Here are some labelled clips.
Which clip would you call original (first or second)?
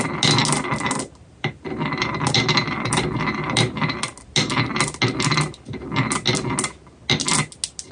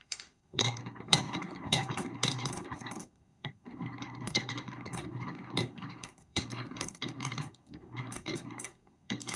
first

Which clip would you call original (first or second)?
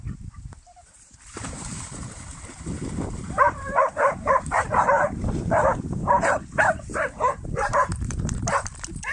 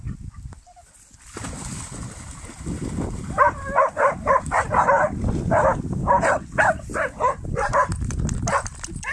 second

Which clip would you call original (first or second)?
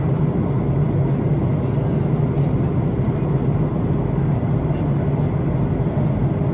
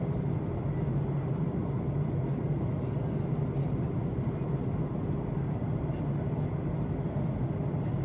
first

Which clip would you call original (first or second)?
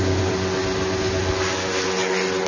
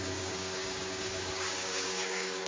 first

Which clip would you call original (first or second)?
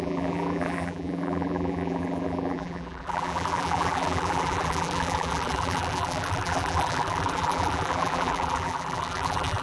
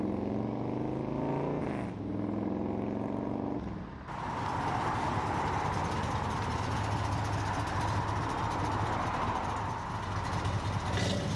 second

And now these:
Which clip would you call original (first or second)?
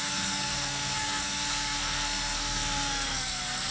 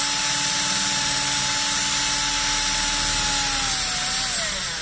second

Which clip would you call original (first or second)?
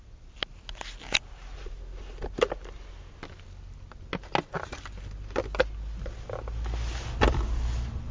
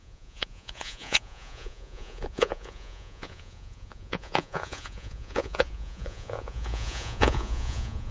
first